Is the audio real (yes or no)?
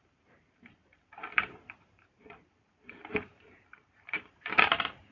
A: no